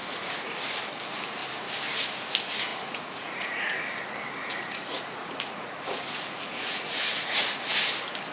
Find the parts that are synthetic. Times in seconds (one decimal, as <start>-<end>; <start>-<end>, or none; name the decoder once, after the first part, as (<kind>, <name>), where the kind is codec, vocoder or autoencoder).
0.0-0.6 (vocoder, Vocos); 2.7-3.7; 4.4-7.7